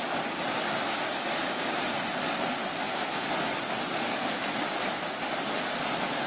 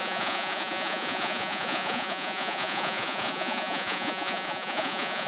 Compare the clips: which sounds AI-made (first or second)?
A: second